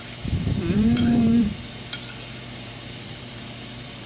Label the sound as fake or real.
fake